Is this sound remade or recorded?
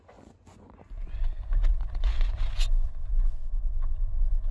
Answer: remade